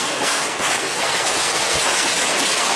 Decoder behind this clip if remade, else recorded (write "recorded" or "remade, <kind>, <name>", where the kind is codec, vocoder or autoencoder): remade, codec, SNAC